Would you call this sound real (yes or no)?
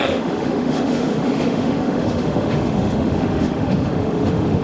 no